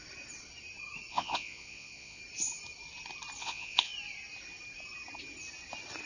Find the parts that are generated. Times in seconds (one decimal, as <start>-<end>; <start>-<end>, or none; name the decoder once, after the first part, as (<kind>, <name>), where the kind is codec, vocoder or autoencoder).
1.1-2.2 (vocoder, Vocos); 3.4-3.9